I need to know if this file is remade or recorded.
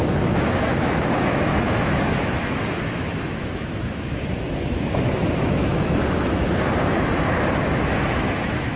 remade